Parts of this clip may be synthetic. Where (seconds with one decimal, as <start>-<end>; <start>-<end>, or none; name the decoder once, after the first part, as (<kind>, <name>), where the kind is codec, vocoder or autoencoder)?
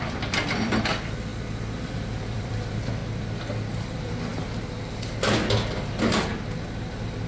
0.0-1.3 (vocoder, BigVGAN v2); 1.9-3.0; 3.7-4.3